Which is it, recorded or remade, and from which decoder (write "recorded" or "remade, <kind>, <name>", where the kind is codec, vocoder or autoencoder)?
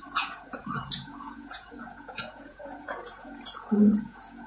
remade, vocoder, Vocos